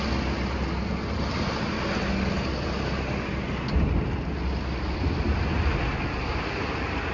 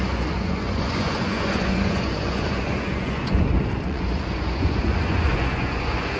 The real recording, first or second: first